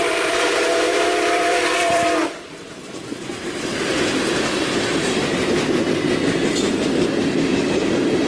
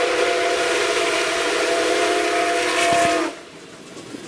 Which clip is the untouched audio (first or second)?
second